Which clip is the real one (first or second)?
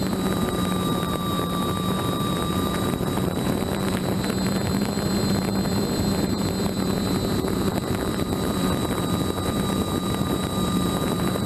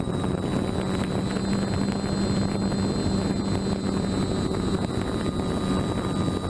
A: second